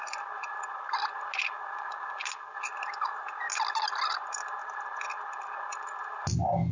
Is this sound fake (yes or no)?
no